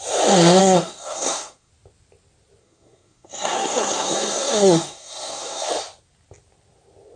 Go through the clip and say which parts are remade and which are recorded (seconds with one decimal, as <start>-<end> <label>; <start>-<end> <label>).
0.0-0.6 recorded; 0.6-1.7 remade; 1.7-2.6 recorded; 2.6-5.7 remade; 5.7-7.2 recorded